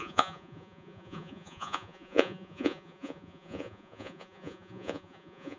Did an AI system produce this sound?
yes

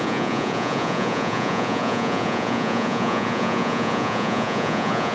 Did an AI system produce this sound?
yes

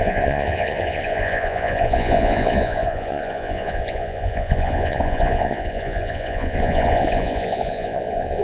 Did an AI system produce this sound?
yes